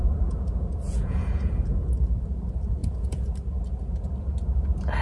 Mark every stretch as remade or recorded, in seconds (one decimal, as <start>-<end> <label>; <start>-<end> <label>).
0.0-2.0 remade; 2.0-2.8 recorded; 2.8-3.3 remade; 3.3-5.0 recorded